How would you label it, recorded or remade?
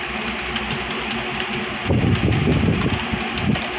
recorded